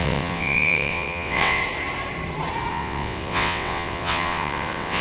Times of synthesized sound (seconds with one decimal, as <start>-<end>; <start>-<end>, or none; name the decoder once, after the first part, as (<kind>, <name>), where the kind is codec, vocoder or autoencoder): 0.0-1.6 (vocoder, WaveNeXt); 2.7-5.0